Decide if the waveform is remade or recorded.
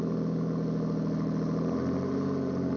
recorded